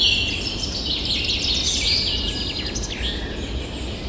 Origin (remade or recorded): recorded